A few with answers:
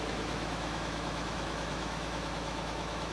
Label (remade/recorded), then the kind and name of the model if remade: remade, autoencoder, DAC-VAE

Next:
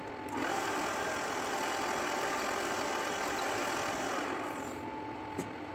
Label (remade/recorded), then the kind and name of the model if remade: recorded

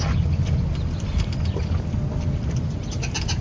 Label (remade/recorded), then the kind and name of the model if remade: recorded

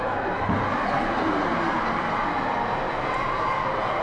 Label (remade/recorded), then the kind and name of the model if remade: recorded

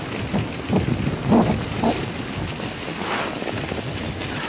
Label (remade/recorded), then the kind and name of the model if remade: recorded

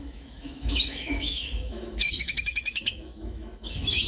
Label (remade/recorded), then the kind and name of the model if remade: remade, autoencoder, DAC-VAE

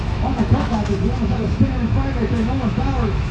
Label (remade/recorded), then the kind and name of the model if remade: remade, autoencoder, DAC-VAE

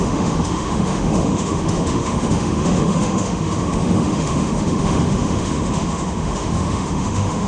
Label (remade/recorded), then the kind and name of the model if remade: remade, autoencoder, DAC-VAE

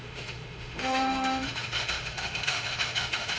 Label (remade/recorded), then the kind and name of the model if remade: remade, autoencoder, DAC-VAE